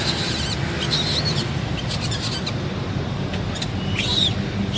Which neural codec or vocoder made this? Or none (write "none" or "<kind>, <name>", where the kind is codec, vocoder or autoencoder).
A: none